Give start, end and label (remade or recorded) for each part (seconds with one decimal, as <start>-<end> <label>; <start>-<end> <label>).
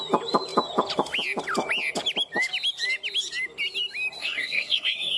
0.0-4.2 recorded; 4.2-5.2 remade